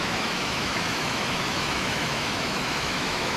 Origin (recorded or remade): remade